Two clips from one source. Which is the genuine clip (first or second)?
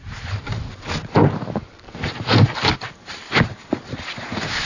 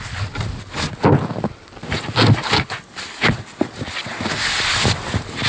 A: second